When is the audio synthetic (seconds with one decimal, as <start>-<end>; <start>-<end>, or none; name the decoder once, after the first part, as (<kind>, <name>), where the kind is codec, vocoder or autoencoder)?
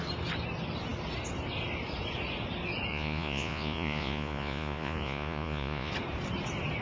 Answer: 2.9-5.9 (vocoder, Vocos)